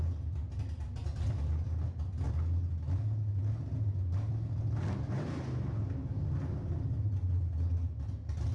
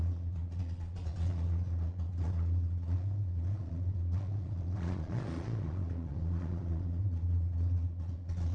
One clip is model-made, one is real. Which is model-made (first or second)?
second